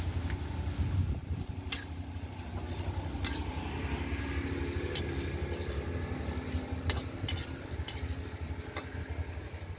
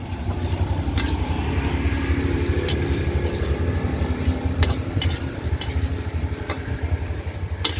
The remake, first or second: second